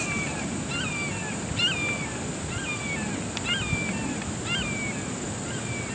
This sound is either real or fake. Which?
real